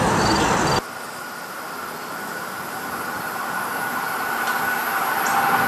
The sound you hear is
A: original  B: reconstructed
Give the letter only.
A